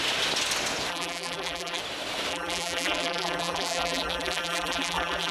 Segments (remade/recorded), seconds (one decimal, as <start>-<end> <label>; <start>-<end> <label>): 0.0-0.9 recorded; 0.9-1.8 remade; 1.8-2.3 recorded; 2.3-5.3 remade